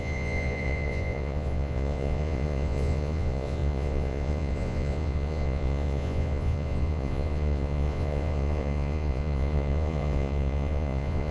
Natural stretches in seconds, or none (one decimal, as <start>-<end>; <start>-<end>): none